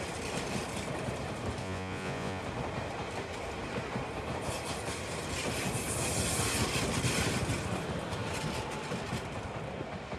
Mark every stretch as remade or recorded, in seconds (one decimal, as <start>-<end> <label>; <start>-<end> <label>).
0.0-1.6 recorded; 1.6-2.4 remade; 2.4-10.2 recorded